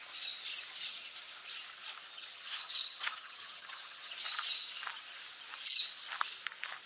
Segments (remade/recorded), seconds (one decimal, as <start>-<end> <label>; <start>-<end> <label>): 0.0-2.1 recorded; 2.1-4.1 remade; 4.1-6.9 recorded